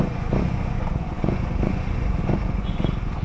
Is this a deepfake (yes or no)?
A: yes